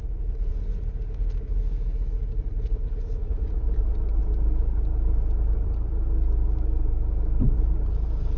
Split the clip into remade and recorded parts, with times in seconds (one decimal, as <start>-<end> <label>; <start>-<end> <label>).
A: 0.0-8.4 recorded

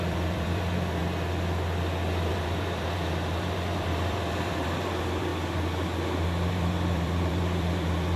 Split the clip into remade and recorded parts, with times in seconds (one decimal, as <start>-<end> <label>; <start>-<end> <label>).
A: 0.0-1.0 remade; 1.0-2.3 recorded; 2.3-5.3 remade; 5.3-6.5 recorded; 6.5-8.2 remade

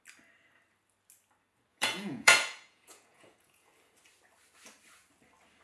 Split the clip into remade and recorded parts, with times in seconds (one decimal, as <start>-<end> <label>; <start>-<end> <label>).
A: 0.0-1.7 recorded; 1.7-3.7 remade; 3.7-5.6 recorded